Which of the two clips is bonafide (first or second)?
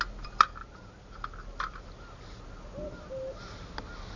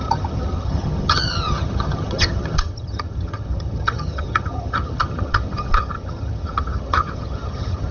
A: first